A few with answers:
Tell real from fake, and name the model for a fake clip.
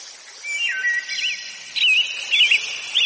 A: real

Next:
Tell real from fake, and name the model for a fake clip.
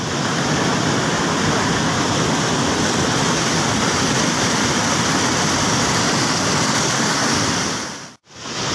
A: real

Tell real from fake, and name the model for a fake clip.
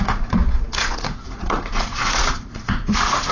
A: fake, vocoder, Vocos